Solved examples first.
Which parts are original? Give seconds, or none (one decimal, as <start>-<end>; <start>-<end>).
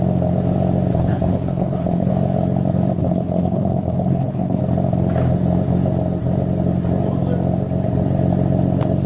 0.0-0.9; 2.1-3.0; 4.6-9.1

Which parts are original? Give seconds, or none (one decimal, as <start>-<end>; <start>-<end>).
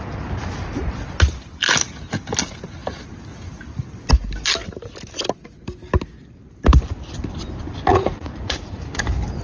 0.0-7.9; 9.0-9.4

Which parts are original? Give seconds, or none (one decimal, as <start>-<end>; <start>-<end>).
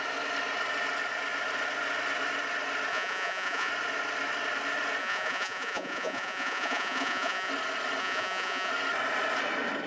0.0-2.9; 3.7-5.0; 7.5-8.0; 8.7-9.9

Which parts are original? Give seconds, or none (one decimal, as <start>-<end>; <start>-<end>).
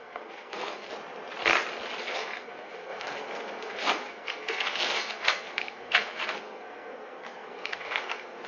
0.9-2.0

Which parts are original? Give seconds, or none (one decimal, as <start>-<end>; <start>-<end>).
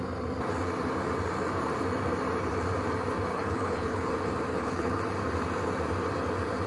0.0-3.3; 4.1-4.5; 5.0-6.7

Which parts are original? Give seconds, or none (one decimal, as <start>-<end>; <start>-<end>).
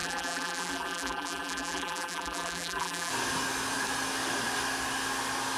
3.1-5.6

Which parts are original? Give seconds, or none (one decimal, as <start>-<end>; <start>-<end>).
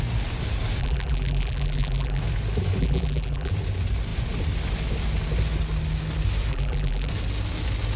0.0-0.8; 2.2-2.8; 3.5-6.5; 7.1-8.0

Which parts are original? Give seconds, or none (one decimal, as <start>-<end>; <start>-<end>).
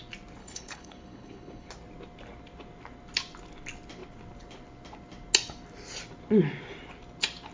0.0-0.4; 1.7-7.5